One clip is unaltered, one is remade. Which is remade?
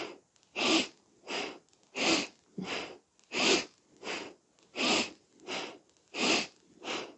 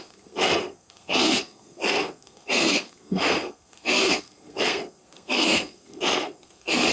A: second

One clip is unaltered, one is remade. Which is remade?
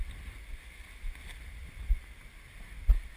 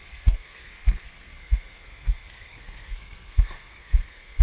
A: second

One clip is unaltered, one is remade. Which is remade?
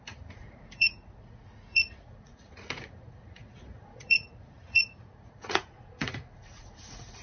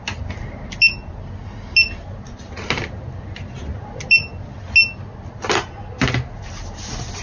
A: first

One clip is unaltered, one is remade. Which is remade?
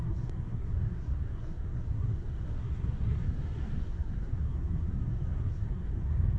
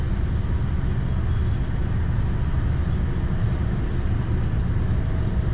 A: first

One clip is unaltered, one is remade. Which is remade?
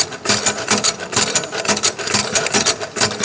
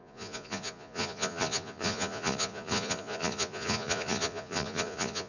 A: second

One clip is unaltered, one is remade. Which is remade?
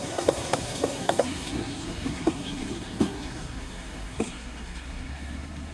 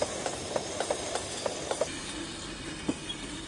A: first